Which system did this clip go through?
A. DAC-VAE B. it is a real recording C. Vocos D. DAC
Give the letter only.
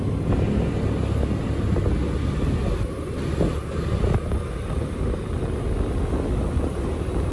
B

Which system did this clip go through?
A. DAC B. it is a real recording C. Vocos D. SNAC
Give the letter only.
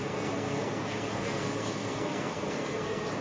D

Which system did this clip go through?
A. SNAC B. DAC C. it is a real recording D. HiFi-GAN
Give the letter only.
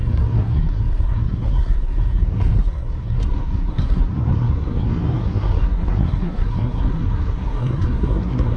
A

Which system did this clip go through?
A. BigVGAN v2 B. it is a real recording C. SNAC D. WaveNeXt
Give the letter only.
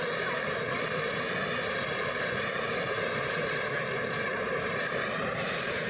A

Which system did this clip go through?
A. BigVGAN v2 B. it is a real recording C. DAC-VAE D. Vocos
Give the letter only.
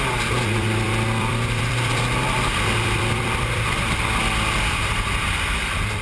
A